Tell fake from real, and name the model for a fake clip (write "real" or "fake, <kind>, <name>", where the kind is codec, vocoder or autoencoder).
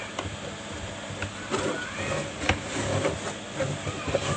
real